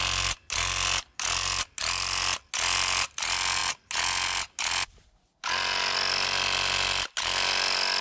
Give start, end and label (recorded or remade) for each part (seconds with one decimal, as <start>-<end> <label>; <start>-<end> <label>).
0.0-8.0 recorded